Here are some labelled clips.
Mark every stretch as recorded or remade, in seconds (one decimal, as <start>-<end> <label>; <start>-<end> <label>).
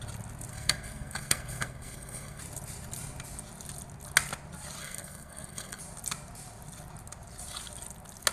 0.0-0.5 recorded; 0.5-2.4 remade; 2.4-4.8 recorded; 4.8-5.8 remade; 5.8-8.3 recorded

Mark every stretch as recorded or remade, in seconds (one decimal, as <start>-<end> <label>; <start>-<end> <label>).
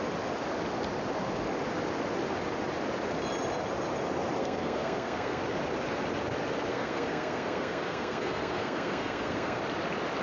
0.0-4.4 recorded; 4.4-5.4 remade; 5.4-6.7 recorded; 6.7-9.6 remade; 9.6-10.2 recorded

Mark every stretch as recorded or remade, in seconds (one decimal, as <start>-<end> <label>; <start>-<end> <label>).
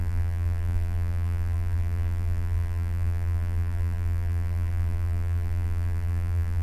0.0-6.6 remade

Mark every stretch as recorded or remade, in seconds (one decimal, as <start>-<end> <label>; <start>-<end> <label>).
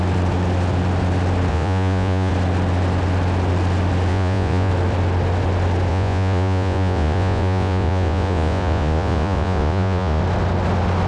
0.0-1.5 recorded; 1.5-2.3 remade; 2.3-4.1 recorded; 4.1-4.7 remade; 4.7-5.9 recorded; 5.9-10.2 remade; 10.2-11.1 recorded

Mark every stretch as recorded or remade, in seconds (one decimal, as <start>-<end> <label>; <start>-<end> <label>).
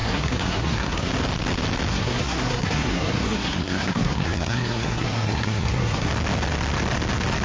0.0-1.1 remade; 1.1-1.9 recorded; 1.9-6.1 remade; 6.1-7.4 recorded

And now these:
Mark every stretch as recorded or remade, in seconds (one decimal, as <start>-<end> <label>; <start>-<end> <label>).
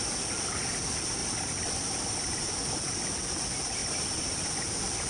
0.0-1.2 recorded; 1.2-2.5 remade; 2.5-3.8 recorded; 3.8-4.5 remade; 4.5-5.1 recorded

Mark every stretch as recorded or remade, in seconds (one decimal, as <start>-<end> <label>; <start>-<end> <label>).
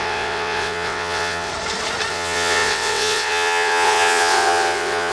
0.0-1.5 remade; 1.5-2.1 recorded; 2.1-5.1 remade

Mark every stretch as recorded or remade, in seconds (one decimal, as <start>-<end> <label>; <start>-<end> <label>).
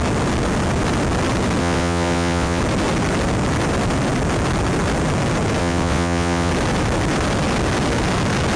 0.0-1.6 recorded; 1.6-2.6 remade; 2.6-5.6 recorded; 5.6-6.5 remade; 6.5-8.6 recorded